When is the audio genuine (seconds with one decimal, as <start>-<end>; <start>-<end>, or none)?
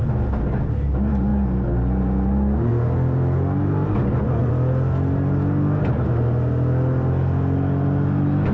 0.0-8.5